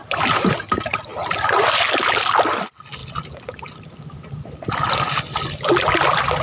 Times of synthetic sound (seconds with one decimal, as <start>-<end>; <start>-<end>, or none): none